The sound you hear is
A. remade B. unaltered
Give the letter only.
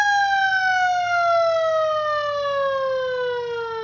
B